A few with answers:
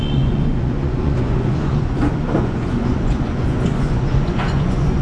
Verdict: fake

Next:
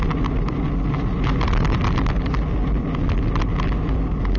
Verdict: real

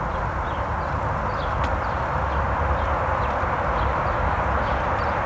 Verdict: real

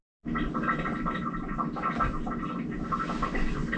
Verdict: real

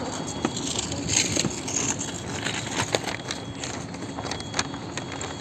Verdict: real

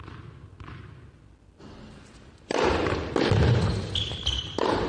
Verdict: real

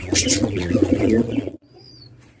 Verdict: fake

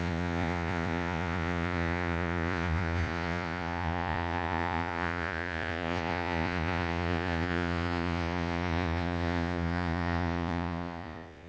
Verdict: fake